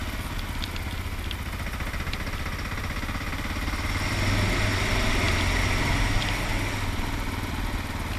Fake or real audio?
real